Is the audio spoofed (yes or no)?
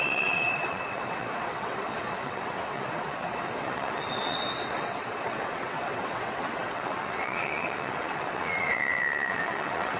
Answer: yes